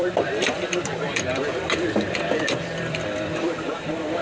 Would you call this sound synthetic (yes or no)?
yes